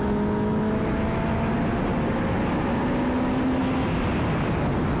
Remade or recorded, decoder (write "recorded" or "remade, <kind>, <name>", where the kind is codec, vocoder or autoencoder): recorded